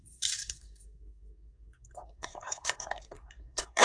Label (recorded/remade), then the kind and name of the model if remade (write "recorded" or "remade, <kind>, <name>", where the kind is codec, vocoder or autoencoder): remade, codec, SNAC